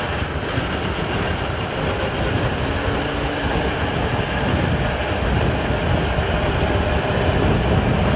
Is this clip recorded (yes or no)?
yes